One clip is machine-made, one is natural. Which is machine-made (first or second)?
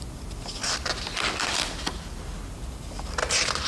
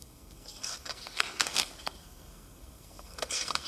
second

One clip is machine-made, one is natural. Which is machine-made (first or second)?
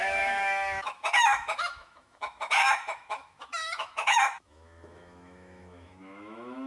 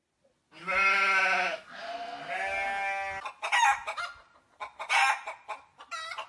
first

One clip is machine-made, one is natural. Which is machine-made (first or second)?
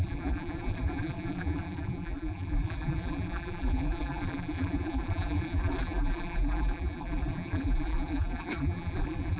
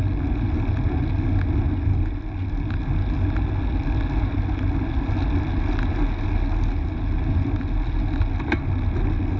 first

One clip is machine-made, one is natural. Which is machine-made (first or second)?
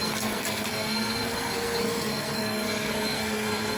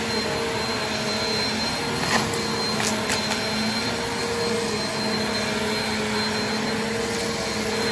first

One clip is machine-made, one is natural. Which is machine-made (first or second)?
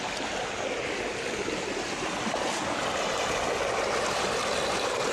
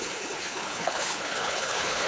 second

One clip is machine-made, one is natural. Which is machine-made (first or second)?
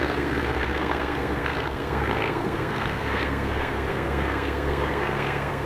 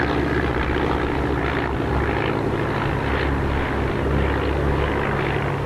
first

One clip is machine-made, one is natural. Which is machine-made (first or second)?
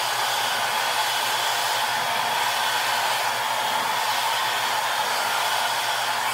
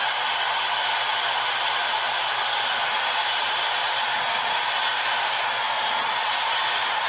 second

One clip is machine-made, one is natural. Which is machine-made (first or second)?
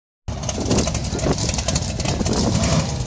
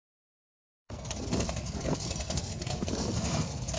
second